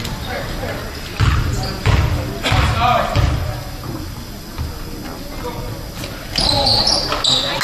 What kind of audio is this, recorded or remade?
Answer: recorded